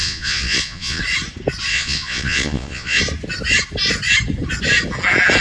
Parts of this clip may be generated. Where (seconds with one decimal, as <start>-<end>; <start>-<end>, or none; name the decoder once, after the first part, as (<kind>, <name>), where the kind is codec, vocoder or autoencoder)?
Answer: 0.0-1.0 (vocoder, Vocos); 1.7-3.0